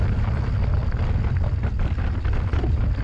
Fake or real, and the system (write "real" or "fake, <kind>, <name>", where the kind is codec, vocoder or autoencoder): real